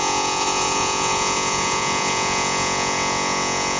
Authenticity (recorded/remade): remade